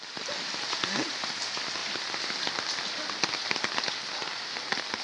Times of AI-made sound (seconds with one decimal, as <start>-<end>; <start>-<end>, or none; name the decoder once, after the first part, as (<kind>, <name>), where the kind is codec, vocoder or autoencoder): none